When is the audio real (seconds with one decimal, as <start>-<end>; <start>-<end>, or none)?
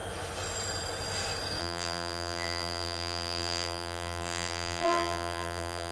0.0-1.6